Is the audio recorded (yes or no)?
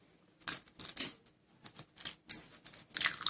yes